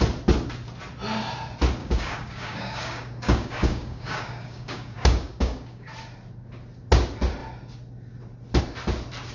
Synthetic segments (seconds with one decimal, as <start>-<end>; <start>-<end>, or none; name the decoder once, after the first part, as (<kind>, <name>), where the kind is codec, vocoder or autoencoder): 1.8-5.9 (codec, DAC)